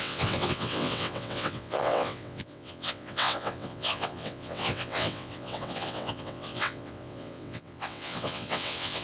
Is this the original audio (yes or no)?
no